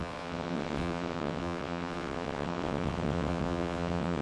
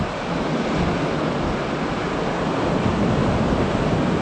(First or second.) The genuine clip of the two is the second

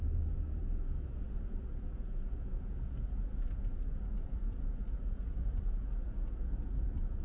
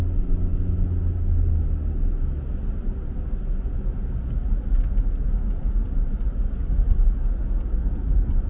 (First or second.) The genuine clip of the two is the second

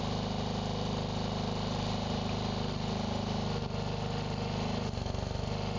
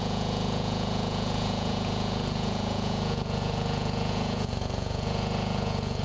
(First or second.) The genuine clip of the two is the first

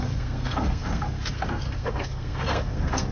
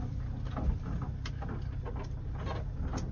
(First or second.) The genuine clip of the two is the second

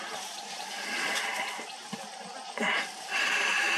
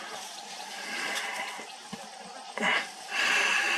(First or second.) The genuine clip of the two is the second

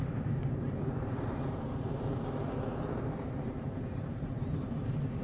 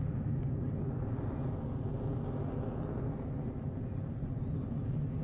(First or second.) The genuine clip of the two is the second